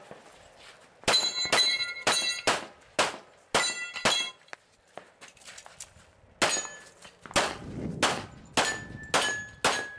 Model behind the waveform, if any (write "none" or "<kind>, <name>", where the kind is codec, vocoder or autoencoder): none